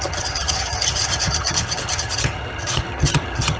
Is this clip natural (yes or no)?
no